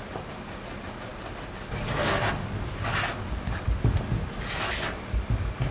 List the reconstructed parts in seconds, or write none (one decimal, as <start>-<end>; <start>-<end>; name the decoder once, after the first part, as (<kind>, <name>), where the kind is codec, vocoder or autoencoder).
none